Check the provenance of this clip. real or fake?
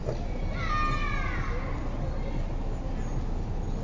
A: real